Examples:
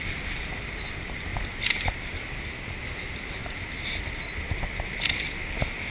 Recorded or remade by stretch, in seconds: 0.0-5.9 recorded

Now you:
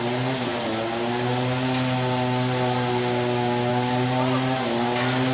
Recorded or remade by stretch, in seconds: 0.0-5.3 recorded

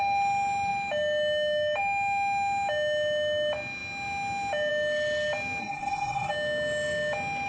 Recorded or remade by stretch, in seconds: 0.0-5.6 recorded; 5.6-6.3 remade; 6.3-7.5 recorded

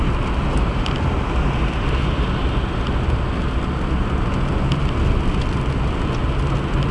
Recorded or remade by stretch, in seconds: 0.0-6.9 recorded

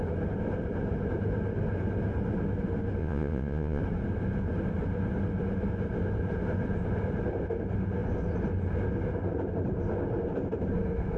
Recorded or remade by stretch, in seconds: 0.0-3.0 recorded; 3.0-3.8 remade; 3.8-11.2 recorded